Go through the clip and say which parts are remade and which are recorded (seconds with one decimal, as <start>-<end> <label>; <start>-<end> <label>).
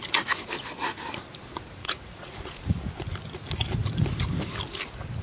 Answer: 0.0-1.8 recorded; 1.8-2.9 remade; 2.9-5.2 recorded